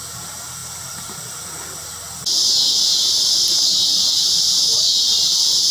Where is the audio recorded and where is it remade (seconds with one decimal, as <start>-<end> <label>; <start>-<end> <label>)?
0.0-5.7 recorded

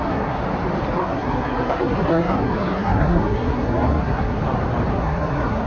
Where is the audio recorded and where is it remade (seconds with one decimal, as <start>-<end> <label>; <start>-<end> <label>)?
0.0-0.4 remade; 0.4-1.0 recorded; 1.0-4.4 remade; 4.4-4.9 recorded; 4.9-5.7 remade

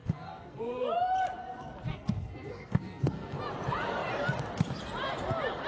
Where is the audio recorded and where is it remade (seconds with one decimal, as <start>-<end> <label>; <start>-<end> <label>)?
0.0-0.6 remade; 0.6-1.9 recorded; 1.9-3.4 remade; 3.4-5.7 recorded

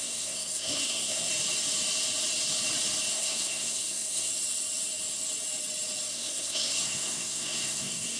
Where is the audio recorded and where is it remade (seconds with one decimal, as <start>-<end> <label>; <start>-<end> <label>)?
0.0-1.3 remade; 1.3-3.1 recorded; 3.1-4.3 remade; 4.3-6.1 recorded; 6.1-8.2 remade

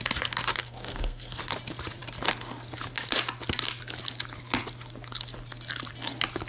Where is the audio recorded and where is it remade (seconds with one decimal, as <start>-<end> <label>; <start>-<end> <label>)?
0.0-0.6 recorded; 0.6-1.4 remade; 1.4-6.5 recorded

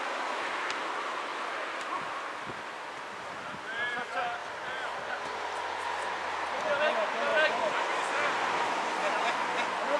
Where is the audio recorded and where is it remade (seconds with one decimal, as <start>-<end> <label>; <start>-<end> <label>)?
0.0-10.0 recorded

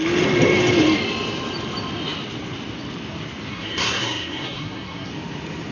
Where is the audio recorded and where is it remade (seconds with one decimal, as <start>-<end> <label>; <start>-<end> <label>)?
0.0-3.5 recorded; 3.5-5.1 remade; 5.1-5.7 recorded